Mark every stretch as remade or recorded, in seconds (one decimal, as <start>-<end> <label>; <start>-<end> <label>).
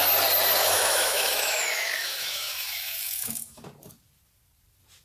0.0-0.6 recorded; 0.6-3.6 remade; 3.6-5.0 recorded